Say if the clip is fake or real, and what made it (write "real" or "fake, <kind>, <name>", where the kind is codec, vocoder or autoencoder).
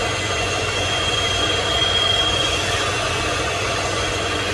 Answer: fake, vocoder, Vocos